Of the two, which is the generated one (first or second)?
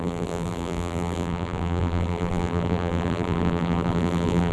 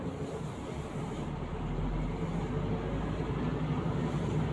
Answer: first